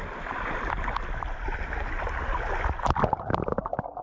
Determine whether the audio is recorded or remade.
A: recorded